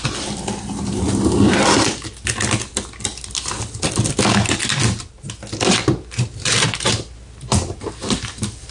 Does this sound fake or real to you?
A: real